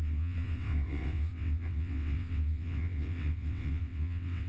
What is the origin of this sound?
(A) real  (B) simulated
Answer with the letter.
B